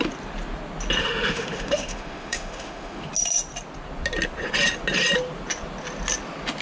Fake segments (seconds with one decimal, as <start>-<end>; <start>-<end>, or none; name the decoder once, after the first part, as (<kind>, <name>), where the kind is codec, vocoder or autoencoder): 1.0-3.1 (autoencoder, DAC-VAE)